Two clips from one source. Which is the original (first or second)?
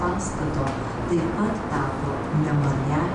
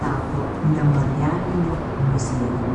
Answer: first